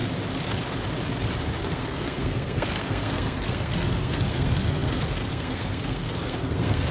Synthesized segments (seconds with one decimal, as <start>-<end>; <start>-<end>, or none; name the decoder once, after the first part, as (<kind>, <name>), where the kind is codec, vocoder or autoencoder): 1.6-6.9 (codec, SNAC)